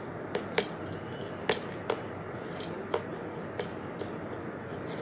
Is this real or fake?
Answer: real